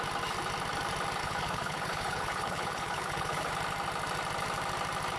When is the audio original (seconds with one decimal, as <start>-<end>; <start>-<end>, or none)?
0.0-1.2; 3.5-5.2